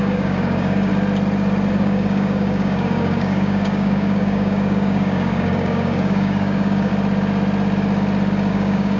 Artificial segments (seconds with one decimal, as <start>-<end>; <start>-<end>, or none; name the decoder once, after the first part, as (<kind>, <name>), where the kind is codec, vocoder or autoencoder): 0.0-0.9 (codec, DAC); 1.7-6.9; 8.5-9.0